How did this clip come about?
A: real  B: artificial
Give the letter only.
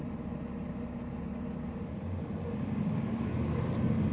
A